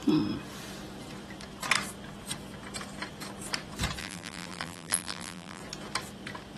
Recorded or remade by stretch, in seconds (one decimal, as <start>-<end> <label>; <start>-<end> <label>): 0.0-4.0 recorded; 4.0-5.6 remade; 5.6-6.6 recorded